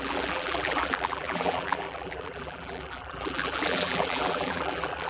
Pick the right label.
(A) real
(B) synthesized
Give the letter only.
B